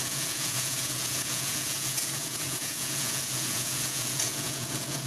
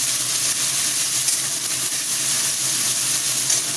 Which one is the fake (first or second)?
first